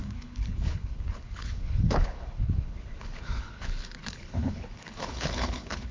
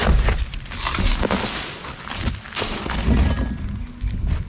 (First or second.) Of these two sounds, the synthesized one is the first